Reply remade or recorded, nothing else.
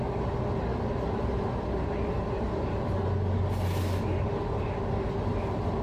recorded